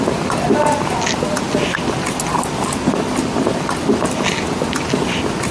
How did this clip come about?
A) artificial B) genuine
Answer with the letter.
B